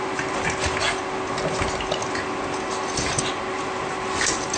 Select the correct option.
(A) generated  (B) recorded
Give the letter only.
B